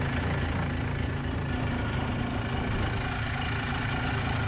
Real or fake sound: real